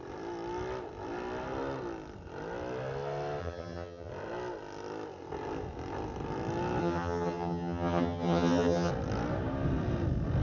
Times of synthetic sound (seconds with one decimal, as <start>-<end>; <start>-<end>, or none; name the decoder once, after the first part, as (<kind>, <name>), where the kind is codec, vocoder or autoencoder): 3.4-4.1 (vocoder, HiFi-GAN); 6.8-8.9

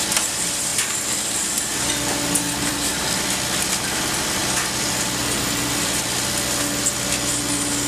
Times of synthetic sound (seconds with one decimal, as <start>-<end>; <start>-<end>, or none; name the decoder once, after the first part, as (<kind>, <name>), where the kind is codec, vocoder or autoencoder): none

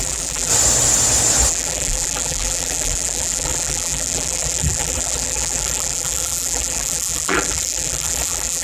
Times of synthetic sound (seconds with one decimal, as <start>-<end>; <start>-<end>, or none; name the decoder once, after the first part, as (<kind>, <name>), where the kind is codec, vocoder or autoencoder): 0.0-0.5 (vocoder, BigVGAN v2); 1.5-8.6

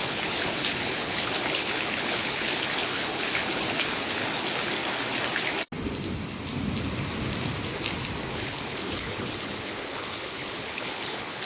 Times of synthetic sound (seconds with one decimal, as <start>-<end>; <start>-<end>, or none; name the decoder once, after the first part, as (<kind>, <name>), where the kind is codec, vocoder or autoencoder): 0.0-4.2 (codec, HILCodec); 8.3-11.5

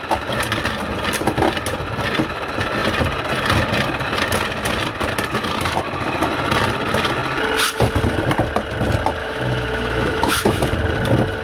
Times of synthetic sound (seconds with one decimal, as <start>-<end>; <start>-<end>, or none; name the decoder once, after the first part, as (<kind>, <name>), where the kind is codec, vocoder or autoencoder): 9.2-10.6 (autoencoder, DAC-VAE)